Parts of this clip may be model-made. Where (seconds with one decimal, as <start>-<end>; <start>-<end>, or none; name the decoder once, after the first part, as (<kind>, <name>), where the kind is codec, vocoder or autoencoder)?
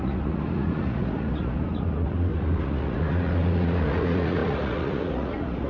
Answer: 0.0-5.7 (vocoder, Vocos)